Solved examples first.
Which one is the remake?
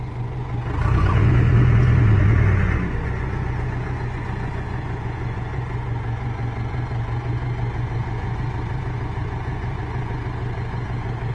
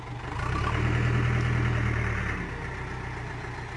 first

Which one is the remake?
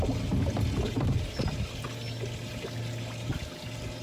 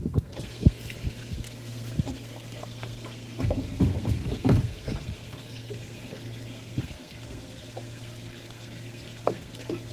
second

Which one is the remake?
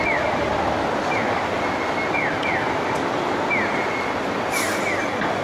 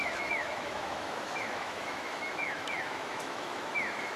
second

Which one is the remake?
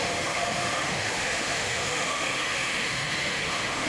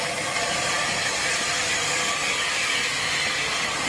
first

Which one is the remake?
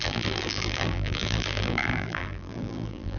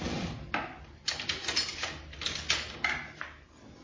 first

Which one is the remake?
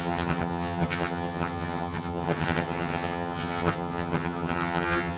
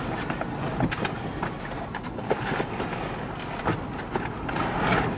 first